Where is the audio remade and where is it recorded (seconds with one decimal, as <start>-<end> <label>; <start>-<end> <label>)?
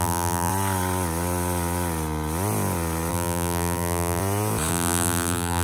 0.0-0.5 remade; 0.5-3.1 recorded; 3.1-4.2 remade; 4.2-4.7 recorded; 4.7-5.6 remade